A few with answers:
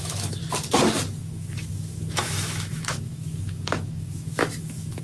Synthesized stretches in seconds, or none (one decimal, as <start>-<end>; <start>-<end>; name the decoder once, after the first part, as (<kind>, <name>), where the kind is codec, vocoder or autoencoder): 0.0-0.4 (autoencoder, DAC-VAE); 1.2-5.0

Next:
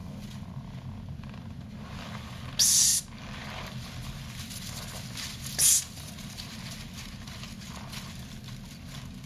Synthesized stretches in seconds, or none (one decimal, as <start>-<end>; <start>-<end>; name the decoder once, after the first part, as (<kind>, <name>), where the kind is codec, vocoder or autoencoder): none

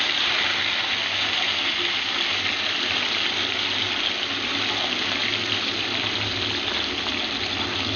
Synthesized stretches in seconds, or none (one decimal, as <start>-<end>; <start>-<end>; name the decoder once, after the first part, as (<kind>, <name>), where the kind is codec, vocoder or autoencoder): none

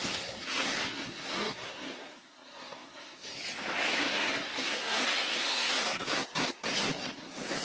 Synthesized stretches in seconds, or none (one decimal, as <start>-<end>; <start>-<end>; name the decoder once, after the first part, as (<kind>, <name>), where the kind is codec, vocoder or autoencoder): 0.0-3.4 (codec, SNAC); 3.9-7.6

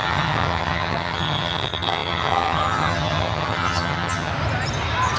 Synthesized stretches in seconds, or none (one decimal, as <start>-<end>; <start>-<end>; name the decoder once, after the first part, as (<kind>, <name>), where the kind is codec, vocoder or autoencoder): 0.0-4.3 (vocoder, HiFi-GAN)

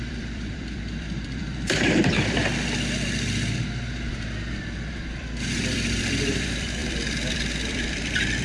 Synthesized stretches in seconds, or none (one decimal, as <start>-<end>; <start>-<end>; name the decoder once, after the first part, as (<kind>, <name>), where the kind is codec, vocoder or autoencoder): 0.0-2.4 (vocoder, BigVGAN v2); 4.9-8.4

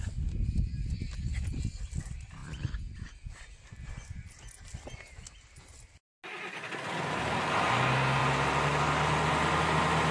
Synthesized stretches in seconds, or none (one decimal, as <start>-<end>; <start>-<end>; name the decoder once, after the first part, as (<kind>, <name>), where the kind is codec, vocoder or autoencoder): none

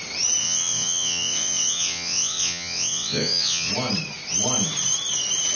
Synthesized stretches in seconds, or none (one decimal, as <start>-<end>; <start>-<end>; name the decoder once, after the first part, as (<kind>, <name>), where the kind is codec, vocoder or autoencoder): 0.4-3.7 (vocoder, WaveNeXt)